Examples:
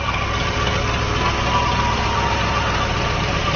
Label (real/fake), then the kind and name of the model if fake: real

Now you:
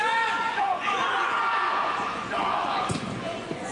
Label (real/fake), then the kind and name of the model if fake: fake, vocoder, Vocos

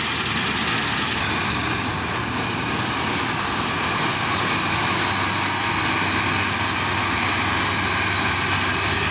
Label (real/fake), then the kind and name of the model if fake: real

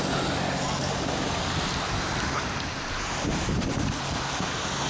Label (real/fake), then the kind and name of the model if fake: real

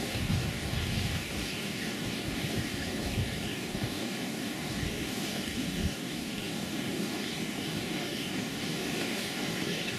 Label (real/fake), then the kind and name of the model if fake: fake, codec, DAC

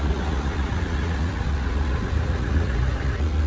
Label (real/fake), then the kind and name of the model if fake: fake, vocoder, Vocos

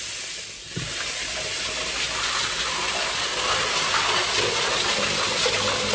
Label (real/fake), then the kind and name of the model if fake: real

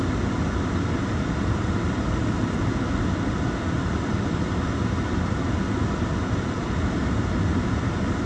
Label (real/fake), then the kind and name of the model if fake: real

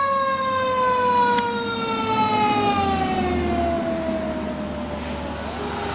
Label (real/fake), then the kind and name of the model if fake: real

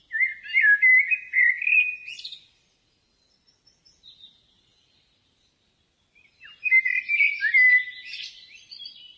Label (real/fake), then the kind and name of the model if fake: real